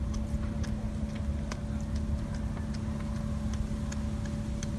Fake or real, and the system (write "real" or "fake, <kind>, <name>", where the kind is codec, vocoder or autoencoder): real